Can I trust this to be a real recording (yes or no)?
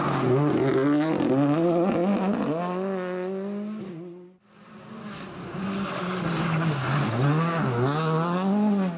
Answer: yes